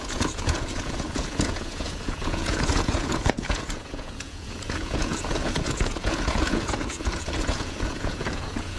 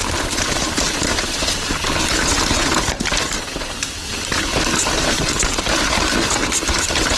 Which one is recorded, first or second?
second